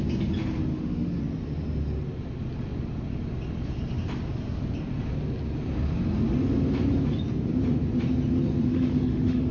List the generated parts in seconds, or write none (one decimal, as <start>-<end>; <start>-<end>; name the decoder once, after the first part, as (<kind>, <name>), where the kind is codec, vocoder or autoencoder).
0.7-1.2 (autoencoder, DAC-VAE); 8.7-9.5

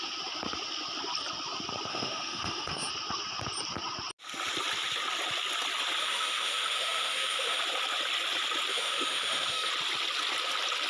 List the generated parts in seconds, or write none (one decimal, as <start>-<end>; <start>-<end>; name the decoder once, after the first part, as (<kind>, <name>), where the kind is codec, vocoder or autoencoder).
1.9-2.9 (autoencoder, DAC-VAE); 6.0-7.6; 8.7-9.7

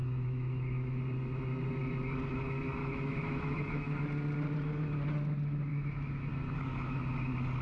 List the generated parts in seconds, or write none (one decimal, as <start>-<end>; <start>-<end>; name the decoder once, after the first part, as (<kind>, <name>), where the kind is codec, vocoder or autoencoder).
0.0-1.0 (autoencoder, DAC-VAE); 2.8-4.0; 5.7-6.3

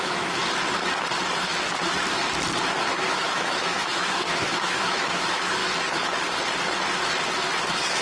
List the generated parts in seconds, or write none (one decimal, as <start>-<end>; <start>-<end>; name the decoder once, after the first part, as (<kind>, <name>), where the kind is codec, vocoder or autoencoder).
0.0-0.4 (autoencoder, DAC-VAE); 2.8-5.6

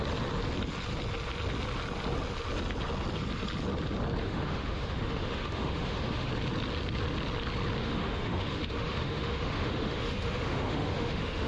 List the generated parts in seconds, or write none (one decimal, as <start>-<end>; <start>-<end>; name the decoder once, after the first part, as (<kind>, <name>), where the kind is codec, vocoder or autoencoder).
4.2-6.3 (autoencoder, DAC-VAE); 7.8-11.5